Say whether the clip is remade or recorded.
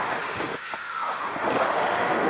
remade